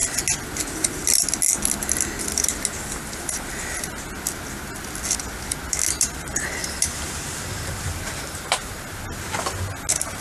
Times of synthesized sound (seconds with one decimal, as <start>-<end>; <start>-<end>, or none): 6.6-8.7